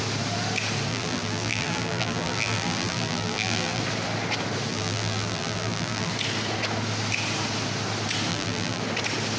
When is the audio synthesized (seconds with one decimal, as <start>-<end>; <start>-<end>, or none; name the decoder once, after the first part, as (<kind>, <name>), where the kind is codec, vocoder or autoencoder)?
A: 0.9-3.8 (vocoder, BigVGAN v2); 4.7-6.1; 8.3-8.8